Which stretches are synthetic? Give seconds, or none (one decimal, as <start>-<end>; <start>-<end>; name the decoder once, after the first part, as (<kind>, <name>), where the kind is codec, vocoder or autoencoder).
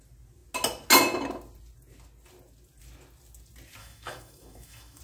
3.8-5.0 (autoencoder, DAC-VAE)